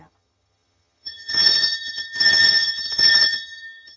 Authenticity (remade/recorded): remade